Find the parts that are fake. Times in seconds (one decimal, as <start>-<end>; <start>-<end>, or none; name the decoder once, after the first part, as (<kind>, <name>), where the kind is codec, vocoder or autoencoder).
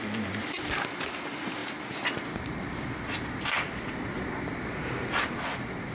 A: none